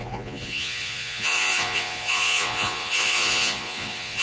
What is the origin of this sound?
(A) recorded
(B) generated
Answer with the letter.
B